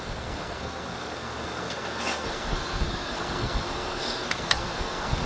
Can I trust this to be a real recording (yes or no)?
no